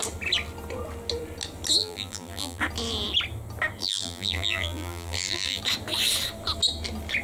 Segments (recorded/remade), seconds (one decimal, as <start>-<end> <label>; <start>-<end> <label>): 0.0-1.8 recorded; 1.8-2.6 remade; 2.6-3.8 recorded; 3.8-5.6 remade; 5.6-7.2 recorded